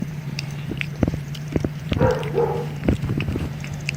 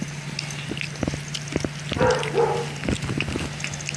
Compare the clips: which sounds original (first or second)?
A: second